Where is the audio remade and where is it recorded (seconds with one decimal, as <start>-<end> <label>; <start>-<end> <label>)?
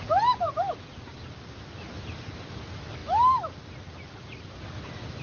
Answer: 0.0-5.2 recorded